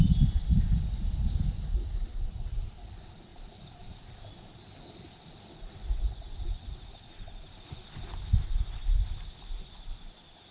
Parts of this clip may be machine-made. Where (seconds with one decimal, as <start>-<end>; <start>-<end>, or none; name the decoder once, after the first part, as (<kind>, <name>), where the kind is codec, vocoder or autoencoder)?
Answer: 2.1-2.8 (vocoder, BigVGAN v2); 3.3-5.3